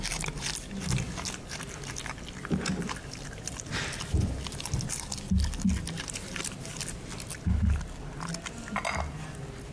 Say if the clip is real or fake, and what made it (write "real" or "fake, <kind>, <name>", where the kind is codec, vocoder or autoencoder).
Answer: real